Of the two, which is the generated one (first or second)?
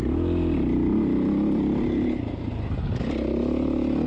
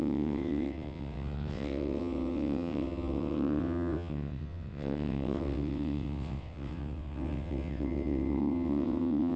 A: second